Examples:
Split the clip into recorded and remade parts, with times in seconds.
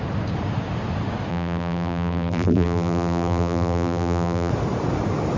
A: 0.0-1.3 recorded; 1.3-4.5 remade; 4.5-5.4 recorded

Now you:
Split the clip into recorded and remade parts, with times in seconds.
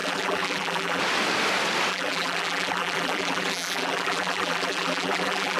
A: 0.0-1.0 remade; 1.0-1.9 recorded; 1.9-5.6 remade